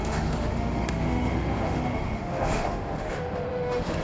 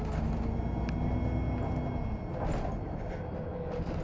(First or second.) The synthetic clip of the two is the first